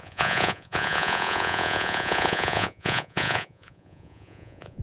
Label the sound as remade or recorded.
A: remade